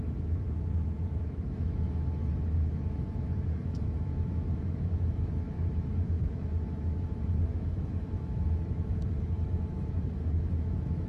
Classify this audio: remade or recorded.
remade